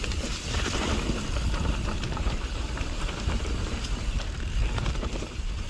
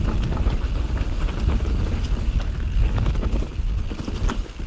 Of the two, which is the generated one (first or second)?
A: first